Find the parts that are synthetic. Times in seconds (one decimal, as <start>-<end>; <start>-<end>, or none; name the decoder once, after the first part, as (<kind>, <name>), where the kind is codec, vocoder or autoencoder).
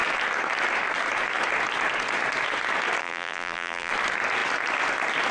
3.0-3.9 (vocoder, BigVGAN v2)